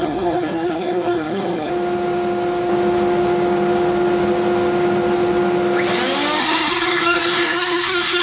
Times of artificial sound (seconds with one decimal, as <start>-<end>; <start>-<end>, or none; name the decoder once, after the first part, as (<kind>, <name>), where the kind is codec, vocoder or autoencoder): 0.0-1.7 (codec, SNAC); 6.4-8.2